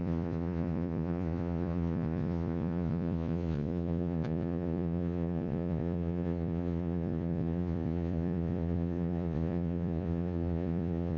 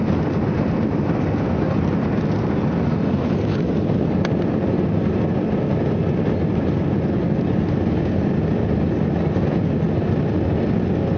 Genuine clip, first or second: second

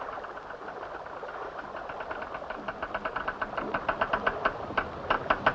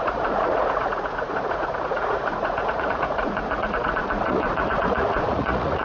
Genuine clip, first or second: first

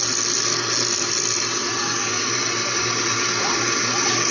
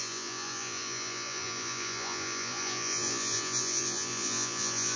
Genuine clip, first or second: first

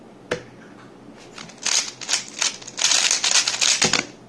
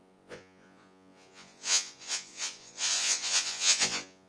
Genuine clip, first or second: first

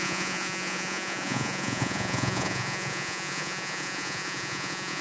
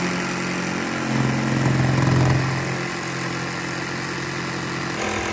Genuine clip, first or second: second